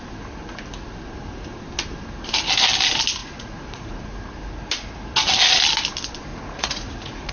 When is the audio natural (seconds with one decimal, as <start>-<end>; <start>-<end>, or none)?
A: 0.0-3.2; 4.0-6.3